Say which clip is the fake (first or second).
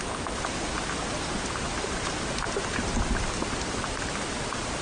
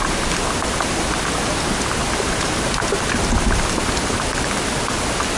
first